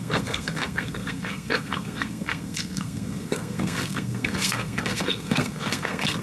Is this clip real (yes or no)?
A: no